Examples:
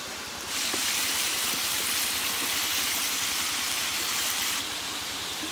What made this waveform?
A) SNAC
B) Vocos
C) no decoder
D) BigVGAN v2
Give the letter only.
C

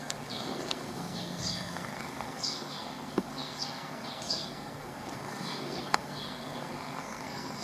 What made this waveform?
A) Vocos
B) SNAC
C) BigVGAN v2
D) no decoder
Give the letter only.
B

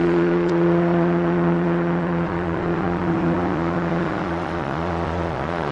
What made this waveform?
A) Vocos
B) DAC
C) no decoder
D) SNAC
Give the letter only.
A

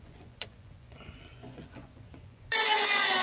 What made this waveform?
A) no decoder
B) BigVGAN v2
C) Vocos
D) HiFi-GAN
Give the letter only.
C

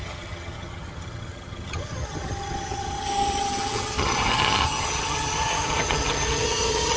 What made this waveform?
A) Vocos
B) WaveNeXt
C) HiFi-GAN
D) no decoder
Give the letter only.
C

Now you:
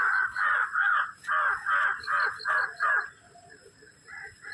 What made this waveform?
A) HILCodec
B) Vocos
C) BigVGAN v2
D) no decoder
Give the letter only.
D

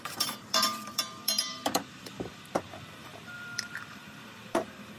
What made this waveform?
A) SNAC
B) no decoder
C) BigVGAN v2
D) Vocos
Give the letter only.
C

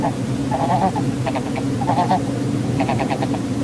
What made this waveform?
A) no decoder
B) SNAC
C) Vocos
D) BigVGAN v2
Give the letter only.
A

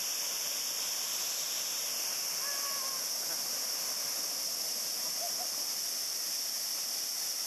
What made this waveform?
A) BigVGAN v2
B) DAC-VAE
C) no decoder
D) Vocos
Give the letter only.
C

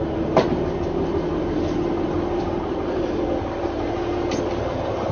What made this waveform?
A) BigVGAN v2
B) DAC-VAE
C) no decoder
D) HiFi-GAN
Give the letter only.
C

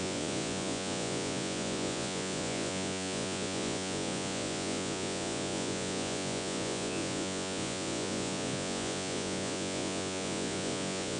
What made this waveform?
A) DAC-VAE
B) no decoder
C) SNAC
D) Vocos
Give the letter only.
D